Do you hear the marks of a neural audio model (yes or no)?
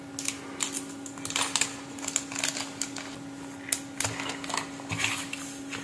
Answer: no